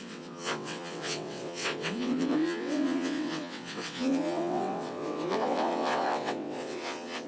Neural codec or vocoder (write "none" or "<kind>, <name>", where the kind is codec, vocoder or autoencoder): vocoder, WaveNeXt